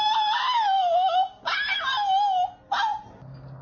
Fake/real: real